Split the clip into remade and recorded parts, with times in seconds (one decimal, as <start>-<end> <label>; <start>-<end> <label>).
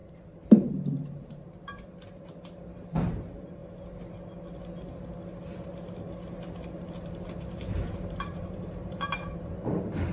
0.0-3.6 remade; 3.6-6.9 recorded; 6.9-10.1 remade